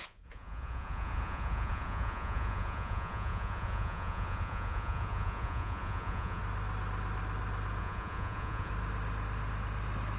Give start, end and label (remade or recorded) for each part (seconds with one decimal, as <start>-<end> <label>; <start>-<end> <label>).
0.0-6.4 remade; 6.4-7.8 recorded; 7.8-8.7 remade; 8.7-10.2 recorded